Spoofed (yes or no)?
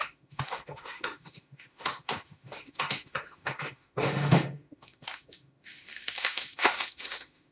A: yes